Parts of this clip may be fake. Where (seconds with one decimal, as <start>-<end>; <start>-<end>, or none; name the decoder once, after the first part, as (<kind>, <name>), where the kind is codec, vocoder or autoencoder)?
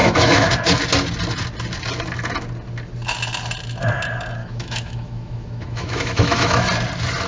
0.0-0.5 (autoencoder, DAC-VAE); 4.4-6.6